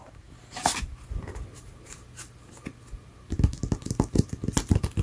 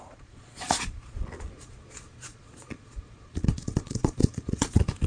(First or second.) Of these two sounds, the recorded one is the first